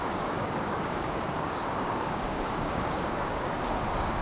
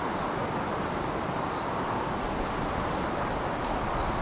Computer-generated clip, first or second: first